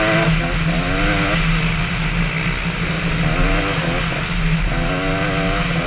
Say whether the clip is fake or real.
real